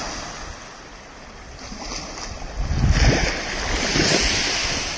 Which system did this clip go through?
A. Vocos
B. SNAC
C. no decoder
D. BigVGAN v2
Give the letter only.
C